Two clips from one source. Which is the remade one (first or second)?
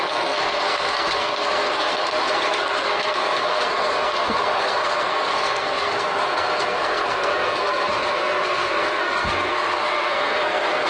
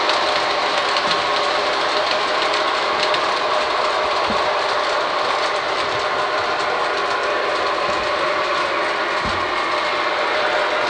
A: first